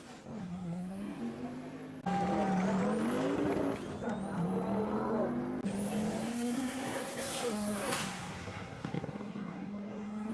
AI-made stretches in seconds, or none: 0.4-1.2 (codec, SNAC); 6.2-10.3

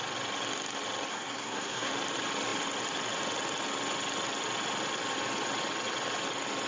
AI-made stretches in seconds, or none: 1.1-1.9 (codec, SNAC)

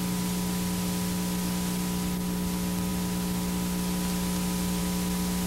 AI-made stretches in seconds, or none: none

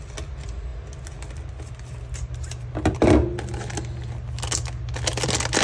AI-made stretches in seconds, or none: none

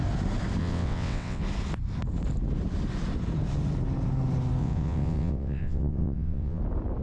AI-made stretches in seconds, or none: 0.6-1.4 (vocoder, WaveNeXt); 4.6-6.6

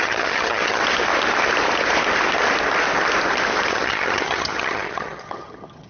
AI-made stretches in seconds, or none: 0.0-0.8 (vocoder, HiFi-GAN); 3.7-5.9

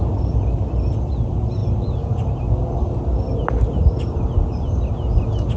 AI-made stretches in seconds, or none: 1.6-2.4 (vocoder, BigVGAN v2)

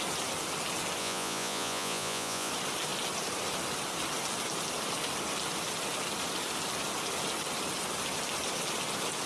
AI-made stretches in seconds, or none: 1.0-2.5 (vocoder, Vocos)